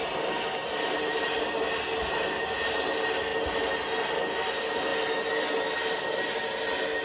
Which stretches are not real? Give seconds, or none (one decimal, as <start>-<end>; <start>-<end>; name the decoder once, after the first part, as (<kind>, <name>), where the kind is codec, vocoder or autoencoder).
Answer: 0.6-1.4 (vocoder, BigVGAN v2)